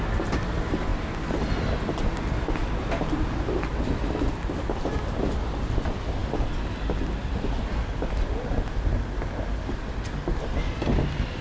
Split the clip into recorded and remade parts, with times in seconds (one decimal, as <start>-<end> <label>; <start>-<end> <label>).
0.0-11.4 recorded